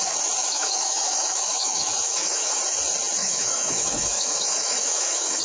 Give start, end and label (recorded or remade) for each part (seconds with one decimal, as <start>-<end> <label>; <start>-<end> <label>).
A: 0.0-0.4 recorded; 0.4-2.6 remade; 2.6-3.2 recorded; 3.2-5.4 remade